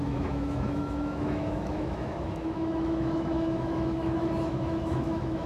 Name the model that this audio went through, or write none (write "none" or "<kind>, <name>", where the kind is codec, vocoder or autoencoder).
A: autoencoder, DAC-VAE